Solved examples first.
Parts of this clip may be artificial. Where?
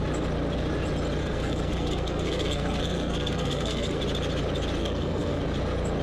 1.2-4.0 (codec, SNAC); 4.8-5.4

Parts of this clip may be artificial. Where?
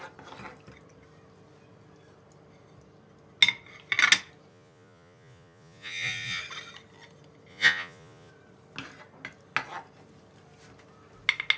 4.5-6.4 (vocoder, Vocos); 7.5-8.3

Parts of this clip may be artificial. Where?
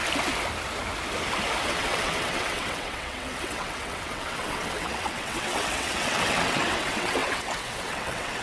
1.6-8.4 (vocoder, WaveNeXt)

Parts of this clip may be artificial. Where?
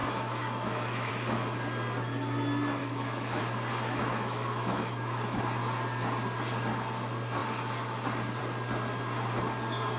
0.0-1.1 (autoencoder, DAC-VAE); 2.8-3.4; 4.1-5.4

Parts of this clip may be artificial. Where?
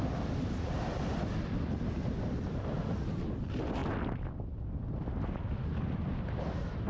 none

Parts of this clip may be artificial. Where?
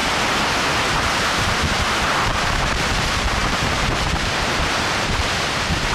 3.4-5.2 (vocoder, BigVGAN v2)